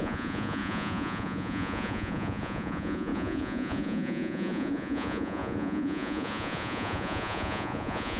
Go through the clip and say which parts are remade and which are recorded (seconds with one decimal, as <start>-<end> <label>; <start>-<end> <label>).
0.0-8.2 remade